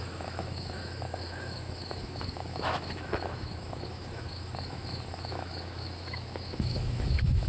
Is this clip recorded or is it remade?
remade